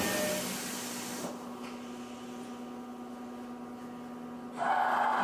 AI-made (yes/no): no